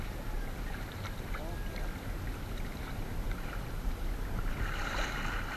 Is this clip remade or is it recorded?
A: recorded